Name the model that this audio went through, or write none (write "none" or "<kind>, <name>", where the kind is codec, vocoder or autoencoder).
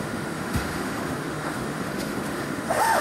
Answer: autoencoder, DAC-VAE